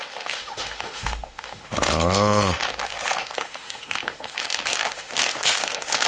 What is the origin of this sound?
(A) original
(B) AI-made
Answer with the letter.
B